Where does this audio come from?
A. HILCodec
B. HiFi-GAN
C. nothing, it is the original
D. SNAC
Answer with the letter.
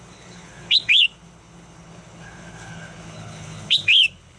A